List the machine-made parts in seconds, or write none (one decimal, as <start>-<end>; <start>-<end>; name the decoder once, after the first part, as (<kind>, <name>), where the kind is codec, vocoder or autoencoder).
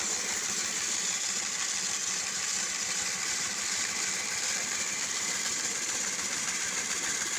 none